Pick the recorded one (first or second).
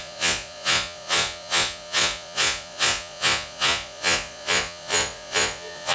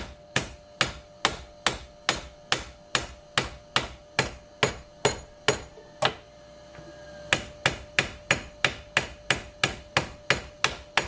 second